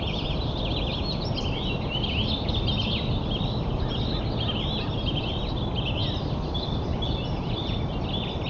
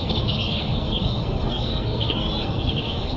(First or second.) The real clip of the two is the first